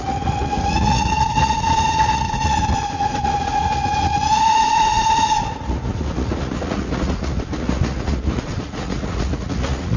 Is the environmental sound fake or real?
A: fake